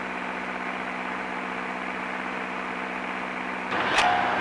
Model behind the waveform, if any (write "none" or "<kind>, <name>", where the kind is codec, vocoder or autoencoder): none